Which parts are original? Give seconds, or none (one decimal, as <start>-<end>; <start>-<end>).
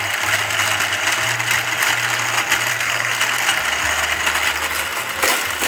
0.0-2.7; 3.2-5.7